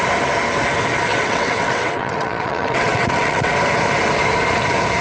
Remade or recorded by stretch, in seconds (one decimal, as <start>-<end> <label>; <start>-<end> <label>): 0.0-1.1 recorded; 1.1-3.5 remade; 3.5-5.0 recorded